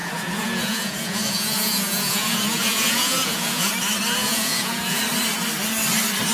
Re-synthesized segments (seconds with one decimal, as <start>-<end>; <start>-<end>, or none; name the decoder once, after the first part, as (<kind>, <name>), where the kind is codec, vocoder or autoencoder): 0.0-3.7 (vocoder, Vocos); 4.2-5.0